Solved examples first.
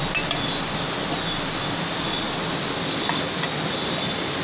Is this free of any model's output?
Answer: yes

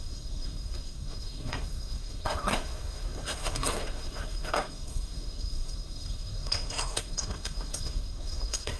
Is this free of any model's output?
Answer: no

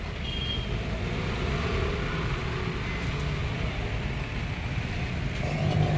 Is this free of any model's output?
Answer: yes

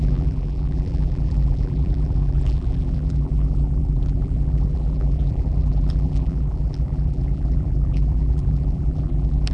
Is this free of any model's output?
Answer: no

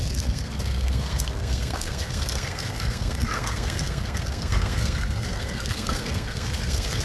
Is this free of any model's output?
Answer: no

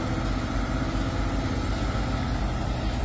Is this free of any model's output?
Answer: yes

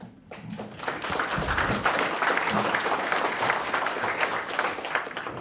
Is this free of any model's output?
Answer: yes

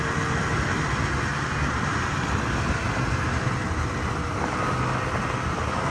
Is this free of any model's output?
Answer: yes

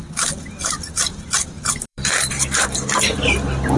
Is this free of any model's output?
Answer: no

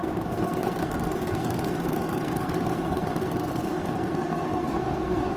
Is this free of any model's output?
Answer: no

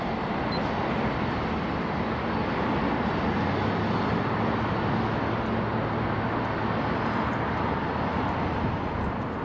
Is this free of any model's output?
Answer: yes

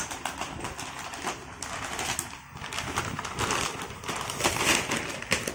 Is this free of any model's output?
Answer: yes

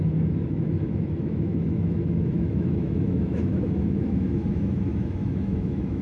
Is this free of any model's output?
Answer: no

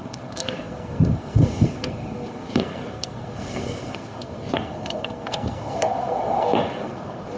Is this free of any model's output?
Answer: no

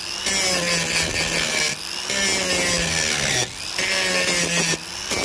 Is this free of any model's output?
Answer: yes